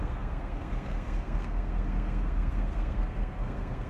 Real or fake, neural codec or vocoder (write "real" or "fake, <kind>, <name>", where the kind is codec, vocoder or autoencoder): fake, codec, SNAC